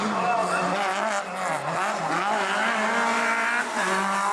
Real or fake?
real